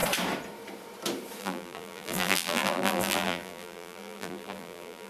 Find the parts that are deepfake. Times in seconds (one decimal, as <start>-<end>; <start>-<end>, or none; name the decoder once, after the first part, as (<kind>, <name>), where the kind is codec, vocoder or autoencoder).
1.4-5.1 (vocoder, BigVGAN v2)